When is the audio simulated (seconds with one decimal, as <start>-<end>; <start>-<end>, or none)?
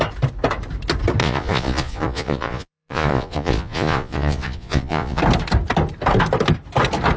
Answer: 1.2-5.2